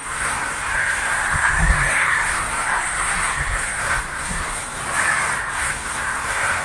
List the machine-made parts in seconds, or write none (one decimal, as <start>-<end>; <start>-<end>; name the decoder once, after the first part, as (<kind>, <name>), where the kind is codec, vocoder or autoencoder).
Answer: 0.0-4.8 (codec, SNAC); 5.5-6.6

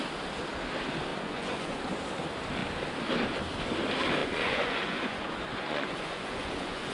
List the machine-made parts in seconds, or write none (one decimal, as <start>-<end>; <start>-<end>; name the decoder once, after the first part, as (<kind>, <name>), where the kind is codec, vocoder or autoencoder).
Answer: 1.1-1.8 (vocoder, Vocos); 4.2-6.9

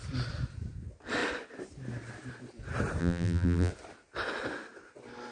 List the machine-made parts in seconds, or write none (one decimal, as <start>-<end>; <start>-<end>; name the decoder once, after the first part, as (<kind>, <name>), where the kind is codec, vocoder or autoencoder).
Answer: 3.0-3.7 (vocoder, BigVGAN v2)

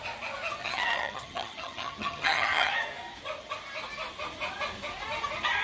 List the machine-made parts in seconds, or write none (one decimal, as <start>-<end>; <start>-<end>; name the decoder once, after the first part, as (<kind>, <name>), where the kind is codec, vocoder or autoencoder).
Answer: 0.6-2.7 (vocoder, HiFi-GAN)

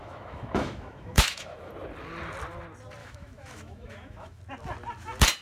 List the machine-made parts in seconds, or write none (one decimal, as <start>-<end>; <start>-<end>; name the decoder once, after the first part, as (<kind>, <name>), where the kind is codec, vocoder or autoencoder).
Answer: 0.0-1.7 (autoencoder, DAC-VAE); 3.0-4.4

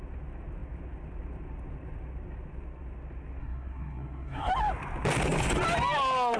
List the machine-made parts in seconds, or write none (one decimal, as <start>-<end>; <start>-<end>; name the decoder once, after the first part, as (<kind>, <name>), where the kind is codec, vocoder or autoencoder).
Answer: 3.4-4.5 (codec, SNAC)